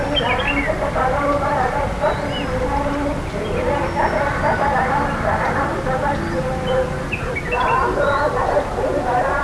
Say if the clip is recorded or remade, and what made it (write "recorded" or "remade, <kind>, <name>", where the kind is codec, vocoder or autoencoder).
recorded